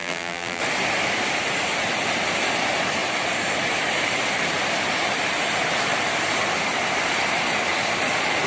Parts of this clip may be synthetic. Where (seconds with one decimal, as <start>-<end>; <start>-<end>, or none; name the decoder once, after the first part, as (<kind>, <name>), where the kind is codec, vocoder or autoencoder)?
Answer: 0.0-0.6 (vocoder, BigVGAN v2)